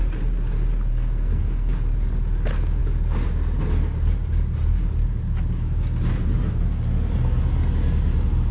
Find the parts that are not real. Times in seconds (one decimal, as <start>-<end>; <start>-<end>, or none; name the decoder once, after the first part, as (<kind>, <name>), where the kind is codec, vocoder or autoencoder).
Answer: 0.9-1.7 (codec, SNAC)